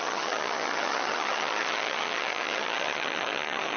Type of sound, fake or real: fake